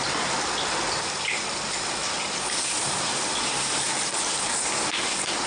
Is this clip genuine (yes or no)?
yes